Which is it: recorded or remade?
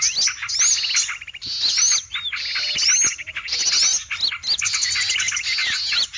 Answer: recorded